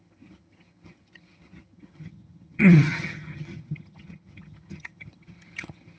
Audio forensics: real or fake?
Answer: fake